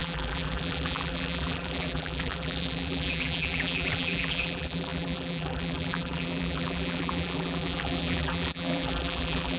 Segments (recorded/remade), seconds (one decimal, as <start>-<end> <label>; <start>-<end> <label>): 0.0-9.6 remade